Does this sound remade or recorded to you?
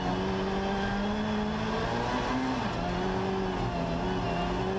recorded